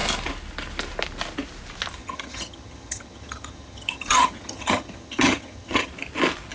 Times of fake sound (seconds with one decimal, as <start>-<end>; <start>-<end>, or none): 2.0-5.9